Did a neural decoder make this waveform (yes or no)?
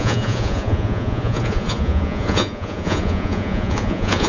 yes